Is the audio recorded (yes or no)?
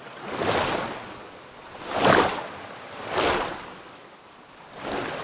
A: yes